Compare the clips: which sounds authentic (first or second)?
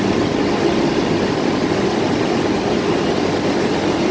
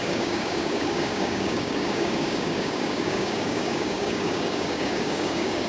first